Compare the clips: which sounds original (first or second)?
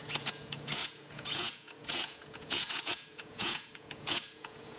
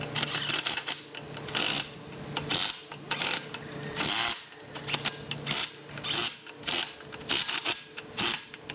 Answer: second